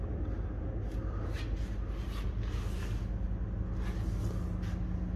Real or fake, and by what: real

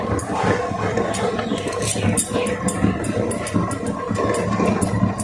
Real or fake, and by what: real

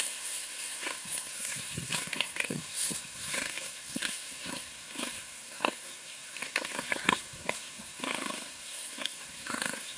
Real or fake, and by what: fake, codec, SNAC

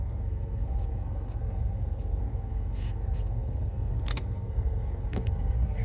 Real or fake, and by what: fake, codec, SNAC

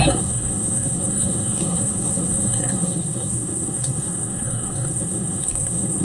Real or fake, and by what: fake, codec, SNAC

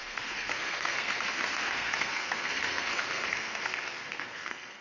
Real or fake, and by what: fake, codec, SNAC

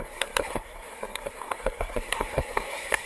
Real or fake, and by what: fake, codec, SNAC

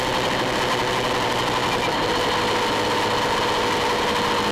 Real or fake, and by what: real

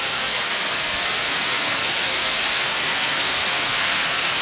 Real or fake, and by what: fake, codec, SNAC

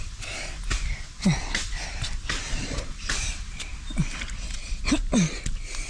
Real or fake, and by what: real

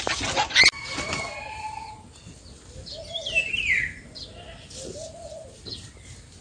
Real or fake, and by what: real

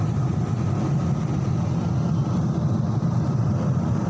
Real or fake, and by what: real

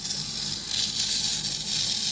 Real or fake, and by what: real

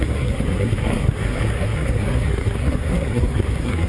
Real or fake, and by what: fake, codec, SNAC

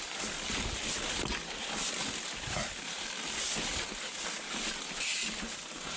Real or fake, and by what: real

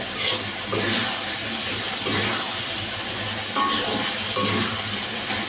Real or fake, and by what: real